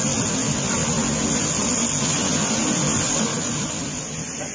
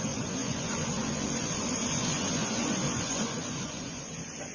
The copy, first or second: second